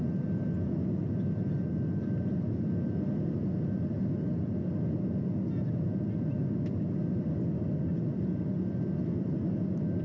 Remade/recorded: recorded